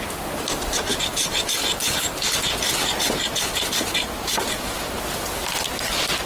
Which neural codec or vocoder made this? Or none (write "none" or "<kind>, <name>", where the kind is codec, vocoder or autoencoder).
none